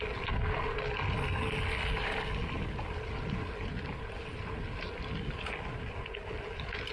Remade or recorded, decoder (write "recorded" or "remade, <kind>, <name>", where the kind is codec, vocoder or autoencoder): recorded